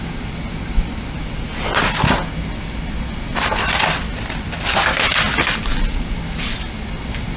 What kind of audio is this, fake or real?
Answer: real